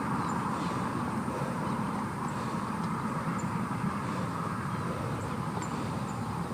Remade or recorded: remade